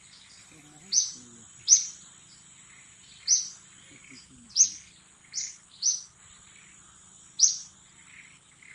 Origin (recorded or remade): recorded